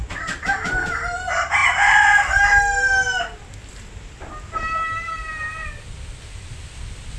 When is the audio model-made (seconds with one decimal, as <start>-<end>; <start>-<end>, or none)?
none